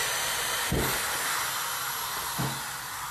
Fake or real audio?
real